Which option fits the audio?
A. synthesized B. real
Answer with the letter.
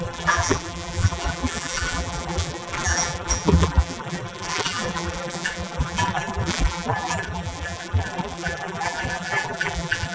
A